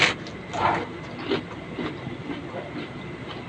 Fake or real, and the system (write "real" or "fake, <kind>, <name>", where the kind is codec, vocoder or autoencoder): real